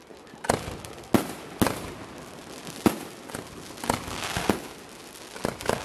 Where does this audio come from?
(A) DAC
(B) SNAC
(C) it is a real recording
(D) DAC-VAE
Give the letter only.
C